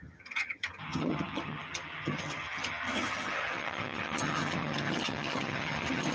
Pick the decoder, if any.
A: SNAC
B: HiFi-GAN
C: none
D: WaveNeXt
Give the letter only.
B